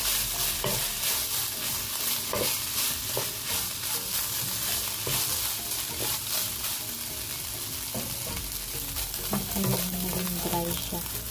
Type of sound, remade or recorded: recorded